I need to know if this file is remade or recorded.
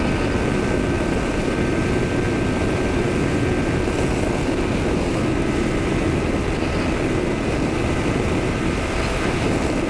recorded